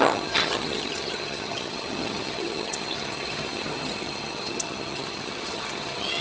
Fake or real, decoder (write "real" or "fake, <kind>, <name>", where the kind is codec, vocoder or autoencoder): fake, vocoder, HiFi-GAN